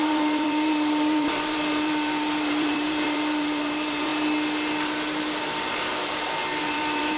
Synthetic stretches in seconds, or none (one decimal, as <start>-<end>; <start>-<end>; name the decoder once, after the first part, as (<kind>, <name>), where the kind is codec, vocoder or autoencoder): 0.0-4.1 (vocoder, BigVGAN v2); 6.6-7.2